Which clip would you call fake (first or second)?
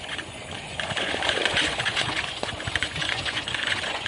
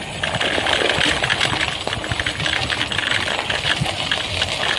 first